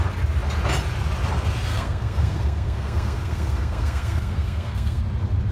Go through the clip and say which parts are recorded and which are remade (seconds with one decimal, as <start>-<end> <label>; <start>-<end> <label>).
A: 0.0-1.7 recorded; 1.7-5.0 remade; 5.0-5.5 recorded

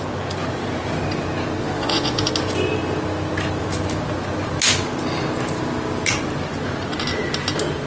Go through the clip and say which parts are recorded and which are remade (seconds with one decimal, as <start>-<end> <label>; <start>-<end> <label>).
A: 0.0-1.6 recorded; 1.6-2.3 remade; 2.3-7.9 recorded